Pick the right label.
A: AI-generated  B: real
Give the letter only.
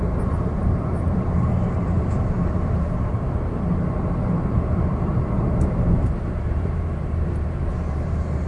A